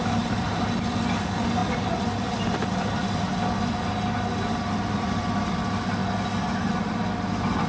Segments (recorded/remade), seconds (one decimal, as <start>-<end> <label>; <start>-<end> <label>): 0.0-7.7 recorded